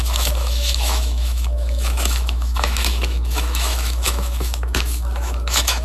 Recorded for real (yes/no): no